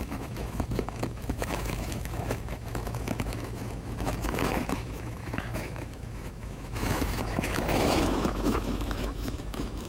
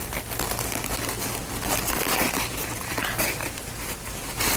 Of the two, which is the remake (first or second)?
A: first